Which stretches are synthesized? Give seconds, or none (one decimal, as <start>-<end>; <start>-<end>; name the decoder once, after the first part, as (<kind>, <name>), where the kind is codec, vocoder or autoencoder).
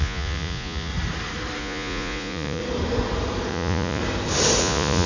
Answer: 0.0-0.9 (vocoder, Vocos); 1.6-2.6; 3.5-4.0; 4.6-5.1